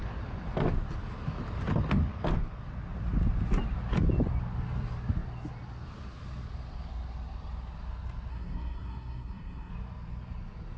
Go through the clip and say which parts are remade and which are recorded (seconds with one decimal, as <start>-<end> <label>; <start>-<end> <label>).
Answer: 0.0-8.3 recorded; 8.3-9.7 remade; 9.7-10.8 recorded